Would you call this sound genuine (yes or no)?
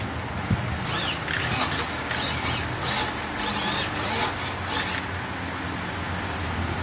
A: yes